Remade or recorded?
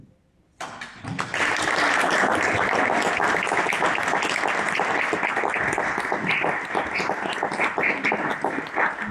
recorded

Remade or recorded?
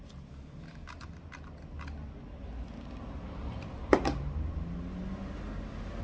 recorded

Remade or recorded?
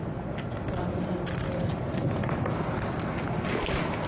recorded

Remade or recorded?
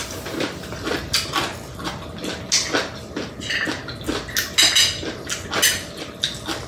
recorded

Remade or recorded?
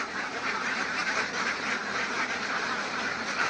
remade